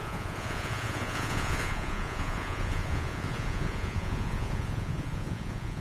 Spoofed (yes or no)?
yes